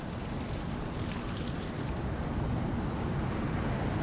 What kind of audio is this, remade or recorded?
recorded